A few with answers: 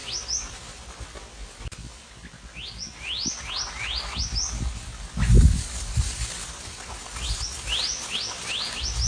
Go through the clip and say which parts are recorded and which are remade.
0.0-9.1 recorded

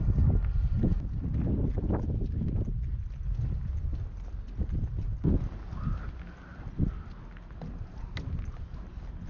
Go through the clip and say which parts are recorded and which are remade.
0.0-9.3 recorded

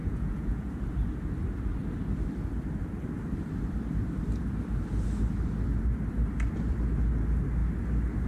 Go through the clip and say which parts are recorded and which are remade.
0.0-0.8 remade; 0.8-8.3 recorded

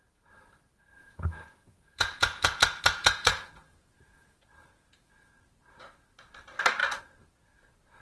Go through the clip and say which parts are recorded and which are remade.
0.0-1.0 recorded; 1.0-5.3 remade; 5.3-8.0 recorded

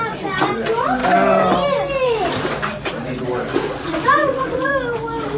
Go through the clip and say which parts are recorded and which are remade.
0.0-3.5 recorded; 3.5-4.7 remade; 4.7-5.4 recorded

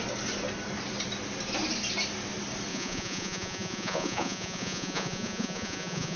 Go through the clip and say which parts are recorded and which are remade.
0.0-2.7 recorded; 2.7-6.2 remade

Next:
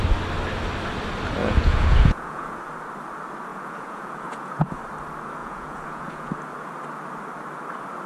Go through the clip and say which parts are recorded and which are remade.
0.0-1.4 recorded; 1.4-2.6 remade; 2.6-3.5 recorded; 3.5-4.8 remade; 4.8-5.4 recorded; 5.4-6.3 remade; 6.3-8.1 recorded

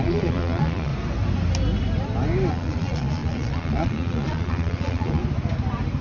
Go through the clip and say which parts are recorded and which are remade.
0.0-0.9 remade; 0.9-2.5 recorded; 2.5-5.2 remade; 5.2-6.0 recorded